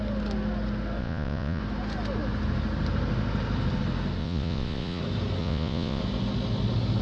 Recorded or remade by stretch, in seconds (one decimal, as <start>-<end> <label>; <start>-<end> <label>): 0.0-1.0 recorded; 1.0-1.6 remade; 1.6-4.2 recorded; 4.2-5.0 remade; 5.0-5.4 recorded; 5.4-6.0 remade; 6.0-7.0 recorded